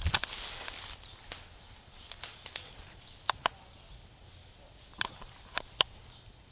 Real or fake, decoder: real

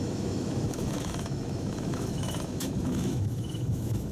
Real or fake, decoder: fake, autoencoder, DAC-VAE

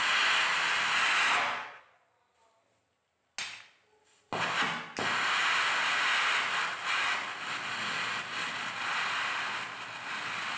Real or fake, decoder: real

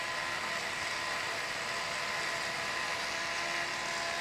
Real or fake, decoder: real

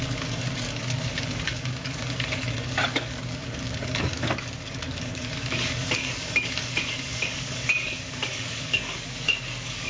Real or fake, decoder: fake, codec, DAC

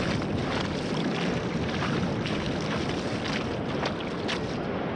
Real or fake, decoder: real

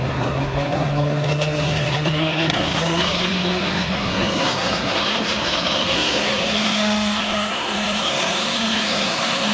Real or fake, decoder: fake, codec, SNAC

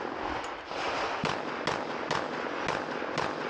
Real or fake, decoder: real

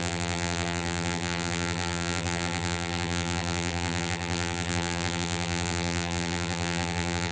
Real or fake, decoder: fake, vocoder, BigVGAN v2